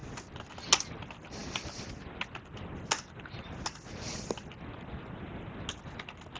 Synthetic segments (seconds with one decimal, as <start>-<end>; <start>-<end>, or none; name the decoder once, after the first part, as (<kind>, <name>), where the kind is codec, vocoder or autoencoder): none